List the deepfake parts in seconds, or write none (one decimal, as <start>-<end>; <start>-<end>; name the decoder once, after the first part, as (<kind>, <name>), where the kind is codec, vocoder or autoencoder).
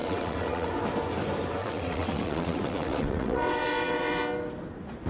0.0-0.7 (vocoder, WaveNeXt); 1.6-4.2